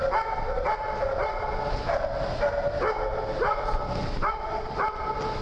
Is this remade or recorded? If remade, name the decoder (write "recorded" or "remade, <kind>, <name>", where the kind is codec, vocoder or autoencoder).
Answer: recorded